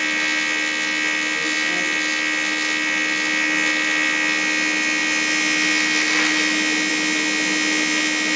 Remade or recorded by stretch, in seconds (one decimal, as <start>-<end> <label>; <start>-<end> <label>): 0.0-8.4 recorded

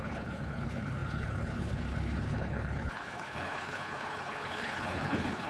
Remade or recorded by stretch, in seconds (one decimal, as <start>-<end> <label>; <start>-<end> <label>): 0.0-5.5 remade

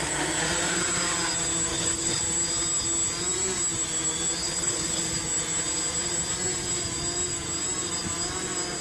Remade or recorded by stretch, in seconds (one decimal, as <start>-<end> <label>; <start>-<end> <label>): 0.0-1.7 recorded; 1.7-2.2 remade; 2.2-4.4 recorded; 4.4-5.0 remade; 5.0-8.8 recorded

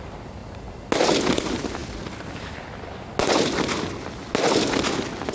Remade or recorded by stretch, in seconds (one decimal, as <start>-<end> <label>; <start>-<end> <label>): 0.0-5.3 recorded